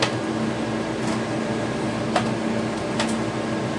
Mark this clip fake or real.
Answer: real